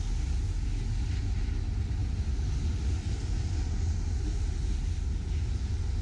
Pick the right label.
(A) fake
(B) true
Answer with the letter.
B